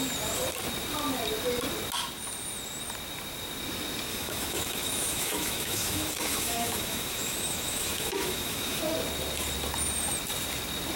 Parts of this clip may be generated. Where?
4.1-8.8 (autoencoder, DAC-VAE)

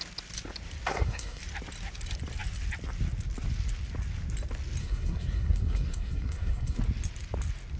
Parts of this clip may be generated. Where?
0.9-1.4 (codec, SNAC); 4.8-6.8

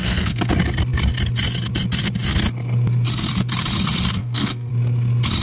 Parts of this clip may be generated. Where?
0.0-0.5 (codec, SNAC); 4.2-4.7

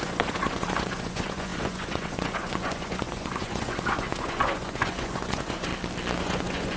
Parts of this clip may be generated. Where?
0.0-5.7 (vocoder, Vocos); 6.2-6.8